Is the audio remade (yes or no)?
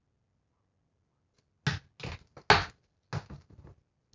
no